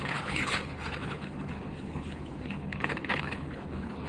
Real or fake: fake